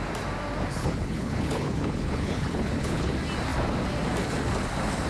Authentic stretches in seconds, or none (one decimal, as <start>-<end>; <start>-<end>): 0.0-0.8; 3.1-5.1